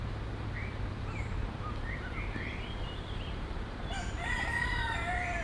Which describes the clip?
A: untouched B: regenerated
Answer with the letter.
B